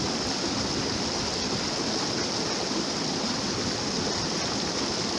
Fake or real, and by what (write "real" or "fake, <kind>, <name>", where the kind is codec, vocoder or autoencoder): real